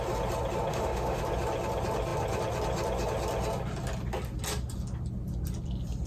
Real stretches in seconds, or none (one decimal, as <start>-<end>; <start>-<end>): 0.0-0.7; 1.2-6.1